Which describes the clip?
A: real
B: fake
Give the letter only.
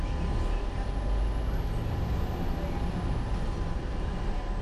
A